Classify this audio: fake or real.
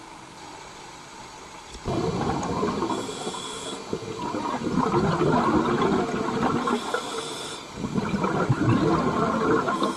real